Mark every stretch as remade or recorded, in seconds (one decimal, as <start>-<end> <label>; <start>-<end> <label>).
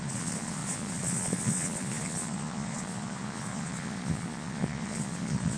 0.0-5.6 remade